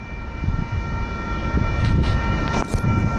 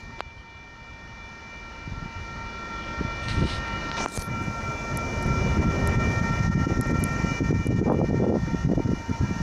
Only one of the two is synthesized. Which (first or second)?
first